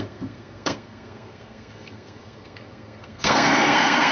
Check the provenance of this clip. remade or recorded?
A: remade